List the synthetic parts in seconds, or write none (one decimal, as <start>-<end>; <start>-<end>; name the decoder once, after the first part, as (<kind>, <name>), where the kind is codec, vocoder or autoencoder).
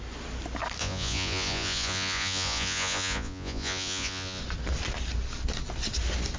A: 0.8-4.4 (vocoder, Vocos)